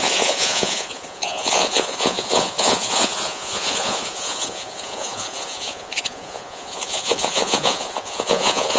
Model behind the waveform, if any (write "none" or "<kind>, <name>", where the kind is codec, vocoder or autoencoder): vocoder, Vocos